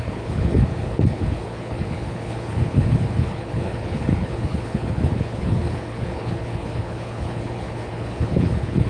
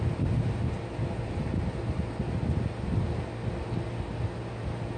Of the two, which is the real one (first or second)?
second